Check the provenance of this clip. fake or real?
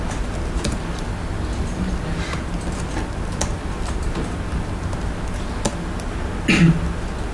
real